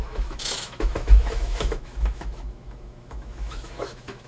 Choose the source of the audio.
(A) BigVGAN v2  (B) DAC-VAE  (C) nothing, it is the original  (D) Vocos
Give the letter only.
B